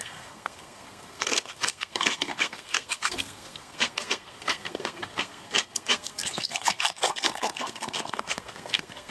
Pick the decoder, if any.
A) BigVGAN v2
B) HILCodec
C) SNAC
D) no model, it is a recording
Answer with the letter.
C